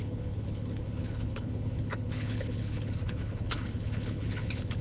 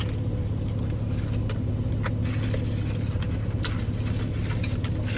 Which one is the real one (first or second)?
second